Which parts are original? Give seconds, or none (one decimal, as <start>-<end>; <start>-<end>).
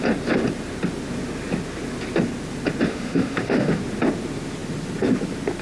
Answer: 0.0-2.9; 3.8-5.6